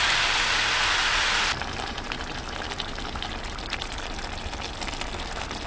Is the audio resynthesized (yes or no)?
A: no